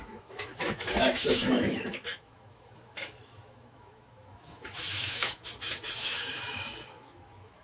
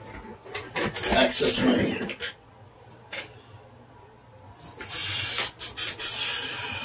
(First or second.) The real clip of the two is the second